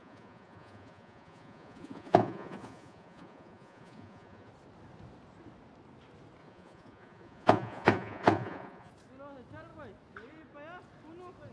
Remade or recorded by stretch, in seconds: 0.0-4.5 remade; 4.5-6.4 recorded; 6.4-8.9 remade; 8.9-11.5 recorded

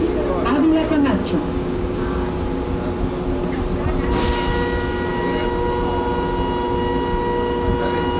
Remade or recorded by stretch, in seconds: 0.0-1.2 recorded; 1.2-2.3 remade; 2.3-8.2 recorded

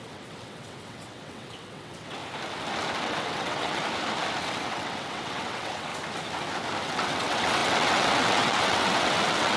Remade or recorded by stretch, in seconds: 0.0-2.2 remade; 2.2-3.0 recorded; 3.0-3.8 remade; 3.8-4.4 recorded; 4.4-5.9 remade; 5.9-6.8 recorded; 6.8-9.6 remade

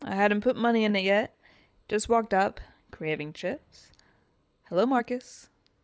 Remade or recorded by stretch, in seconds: 0.0-0.9 recorded; 0.9-2.0 remade; 2.0-2.5 recorded; 2.5-5.0 remade; 5.0-5.8 recorded

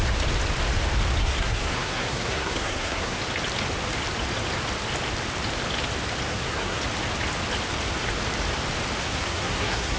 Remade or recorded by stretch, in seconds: 0.0-1.2 recorded; 1.2-3.2 remade; 3.2-6.3 recorded; 6.3-6.8 remade; 6.8-9.1 recorded; 9.1-10.0 remade

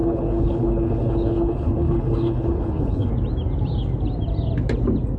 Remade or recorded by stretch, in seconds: 0.0-3.1 remade; 3.1-5.2 recorded